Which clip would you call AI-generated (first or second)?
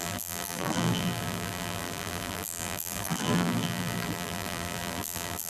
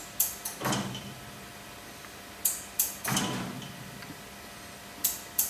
first